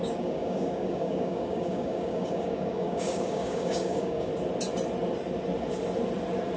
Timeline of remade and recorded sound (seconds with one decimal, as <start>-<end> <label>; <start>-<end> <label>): 0.0-4.3 remade; 4.3-6.6 recorded